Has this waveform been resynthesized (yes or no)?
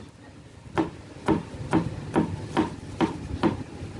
no